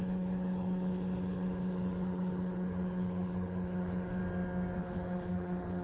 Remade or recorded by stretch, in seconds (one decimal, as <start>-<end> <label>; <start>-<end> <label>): 0.0-4.2 remade; 4.2-4.8 recorded; 4.8-5.8 remade